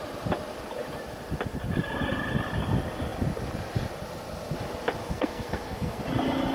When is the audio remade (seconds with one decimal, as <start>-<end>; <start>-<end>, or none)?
5.0-6.0